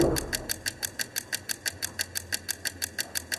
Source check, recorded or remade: recorded